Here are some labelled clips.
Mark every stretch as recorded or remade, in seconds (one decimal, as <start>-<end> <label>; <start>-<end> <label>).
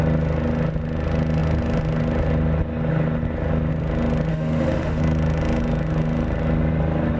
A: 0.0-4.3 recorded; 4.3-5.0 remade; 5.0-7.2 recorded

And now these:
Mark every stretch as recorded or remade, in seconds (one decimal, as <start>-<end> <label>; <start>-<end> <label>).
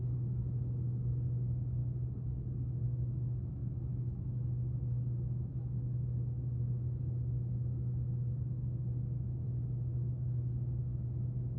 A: 0.0-1.8 remade; 1.8-2.6 recorded; 2.6-11.6 remade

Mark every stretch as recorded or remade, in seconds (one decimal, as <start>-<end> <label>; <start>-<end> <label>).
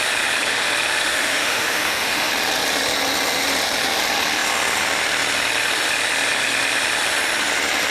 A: 0.0-1.1 recorded; 1.1-2.3 remade; 2.3-7.9 recorded